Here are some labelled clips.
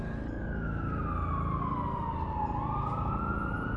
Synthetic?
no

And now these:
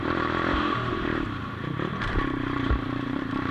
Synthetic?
yes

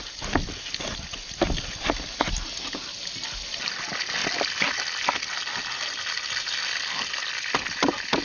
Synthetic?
no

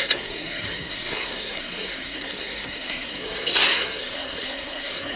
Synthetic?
yes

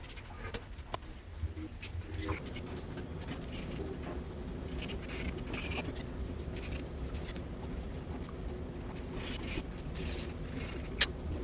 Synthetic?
no